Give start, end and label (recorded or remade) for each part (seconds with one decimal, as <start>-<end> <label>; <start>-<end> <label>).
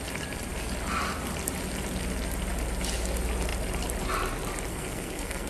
0.0-4.7 recorded; 4.7-5.5 remade